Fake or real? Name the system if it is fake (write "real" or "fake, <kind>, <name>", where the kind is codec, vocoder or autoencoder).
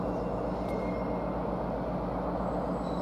real